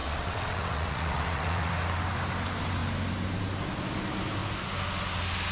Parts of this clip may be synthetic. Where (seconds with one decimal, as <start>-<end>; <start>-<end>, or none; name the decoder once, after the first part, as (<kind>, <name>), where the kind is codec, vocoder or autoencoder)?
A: 0.0-1.7 (vocoder, WaveNeXt)